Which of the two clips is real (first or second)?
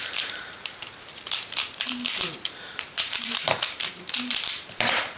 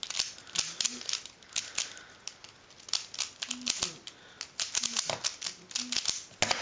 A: second